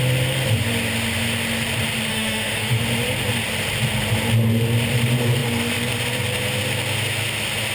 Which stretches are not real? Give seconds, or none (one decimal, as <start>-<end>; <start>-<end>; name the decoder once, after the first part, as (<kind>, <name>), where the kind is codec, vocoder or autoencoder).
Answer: 2.1-2.8 (autoencoder, DAC-VAE)